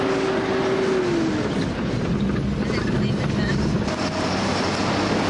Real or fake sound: real